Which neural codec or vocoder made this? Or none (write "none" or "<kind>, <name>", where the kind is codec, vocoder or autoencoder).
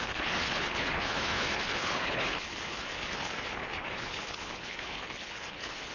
codec, HILCodec